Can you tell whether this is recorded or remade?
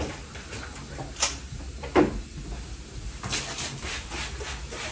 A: recorded